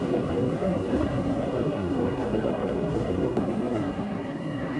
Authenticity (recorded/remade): remade